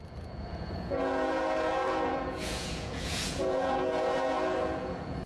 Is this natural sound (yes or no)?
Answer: no